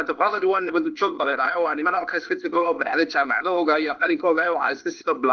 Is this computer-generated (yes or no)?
yes